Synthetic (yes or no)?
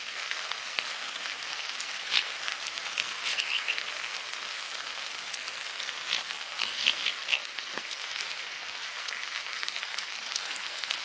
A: yes